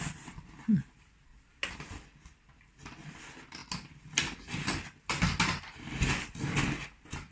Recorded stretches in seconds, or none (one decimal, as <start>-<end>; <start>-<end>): 0.0-7.3